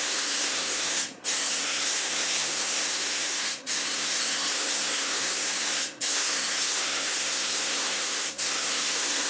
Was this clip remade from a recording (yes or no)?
yes